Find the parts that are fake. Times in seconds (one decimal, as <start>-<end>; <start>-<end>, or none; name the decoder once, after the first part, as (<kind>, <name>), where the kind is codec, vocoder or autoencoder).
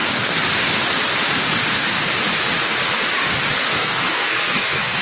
3.8-5.0 (codec, SNAC)